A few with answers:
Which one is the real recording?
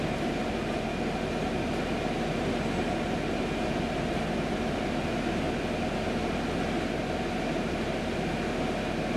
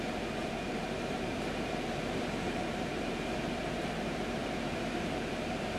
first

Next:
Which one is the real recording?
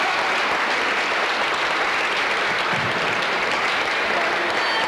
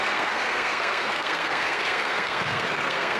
first